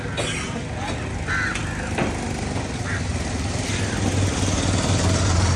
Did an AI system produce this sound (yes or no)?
no